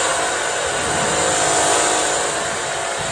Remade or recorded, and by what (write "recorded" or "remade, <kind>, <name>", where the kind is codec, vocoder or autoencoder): recorded